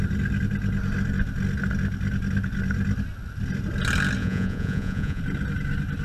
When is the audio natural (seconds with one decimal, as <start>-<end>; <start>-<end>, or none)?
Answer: 0.0-4.2; 5.2-6.0